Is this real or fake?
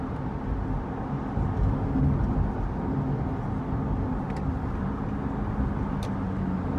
real